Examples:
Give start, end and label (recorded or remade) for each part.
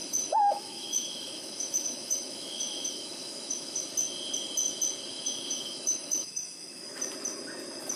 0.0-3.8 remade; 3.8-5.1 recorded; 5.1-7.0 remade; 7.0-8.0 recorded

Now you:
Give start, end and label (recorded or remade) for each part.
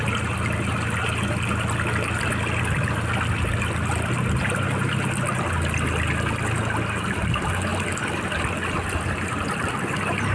0.0-10.3 recorded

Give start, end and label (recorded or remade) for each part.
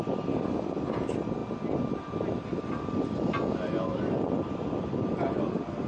0.0-1.4 remade; 1.4-3.0 recorded; 3.0-5.9 remade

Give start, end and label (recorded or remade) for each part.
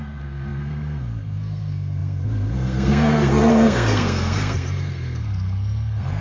0.0-6.2 remade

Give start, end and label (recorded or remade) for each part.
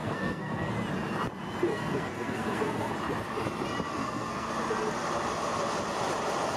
0.0-0.7 remade; 0.7-1.7 recorded; 1.7-2.9 remade; 2.9-4.0 recorded; 4.0-4.5 remade; 4.5-6.6 recorded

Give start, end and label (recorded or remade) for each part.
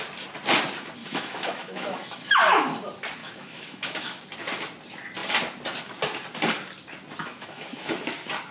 0.0-1.0 recorded; 1.0-2.7 remade; 2.7-3.2 recorded; 3.2-4.2 remade; 4.2-7.2 recorded; 7.2-8.0 remade; 8.0-8.5 recorded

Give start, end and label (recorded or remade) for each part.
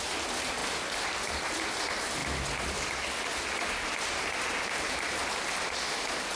0.0-6.4 recorded